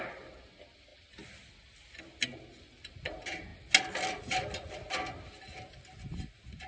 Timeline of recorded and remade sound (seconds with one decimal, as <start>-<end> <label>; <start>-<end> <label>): 0.0-6.7 recorded